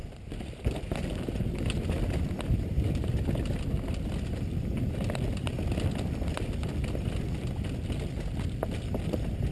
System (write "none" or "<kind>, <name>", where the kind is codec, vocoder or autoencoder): none